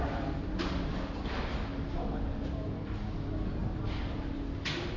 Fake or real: real